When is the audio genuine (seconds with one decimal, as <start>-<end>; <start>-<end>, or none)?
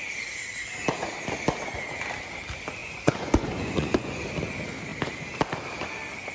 0.0-2.8; 4.2-6.3